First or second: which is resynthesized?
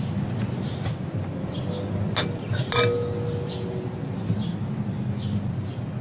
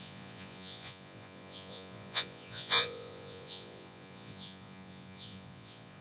second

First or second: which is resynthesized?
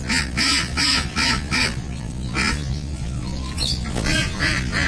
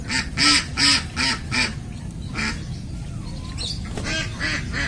first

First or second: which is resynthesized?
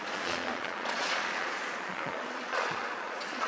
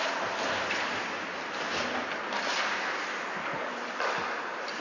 first